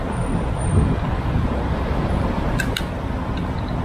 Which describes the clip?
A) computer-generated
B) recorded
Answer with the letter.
B